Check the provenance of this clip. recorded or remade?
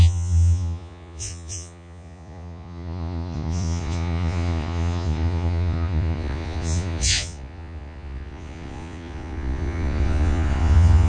remade